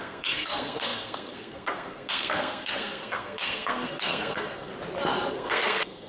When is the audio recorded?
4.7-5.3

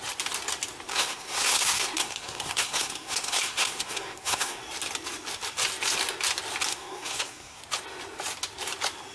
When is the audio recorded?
0.0-0.9; 4.6-6.7; 7.6-9.1

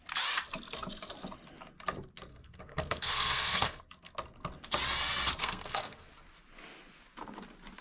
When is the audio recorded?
0.0-2.3; 3.8-5.4; 6.1-7.8

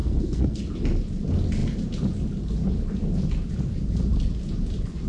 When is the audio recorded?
0.6-5.1